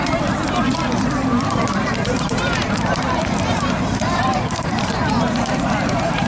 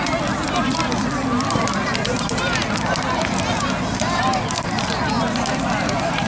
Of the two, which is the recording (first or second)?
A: second